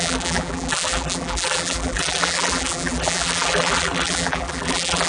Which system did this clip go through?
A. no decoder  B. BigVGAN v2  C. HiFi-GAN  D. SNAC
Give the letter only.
B